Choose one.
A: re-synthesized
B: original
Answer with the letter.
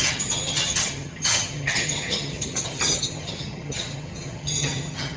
A